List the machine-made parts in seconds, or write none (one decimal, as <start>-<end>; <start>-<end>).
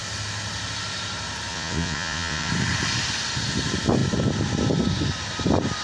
1.5-2.5